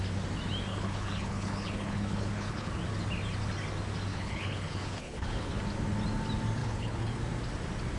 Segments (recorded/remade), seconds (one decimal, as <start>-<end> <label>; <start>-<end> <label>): 0.0-0.7 recorded; 0.7-2.7 remade; 2.7-4.1 recorded; 4.1-5.6 remade; 5.6-6.6 recorded; 6.6-7.2 remade; 7.2-8.0 recorded